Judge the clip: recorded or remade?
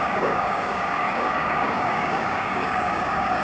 remade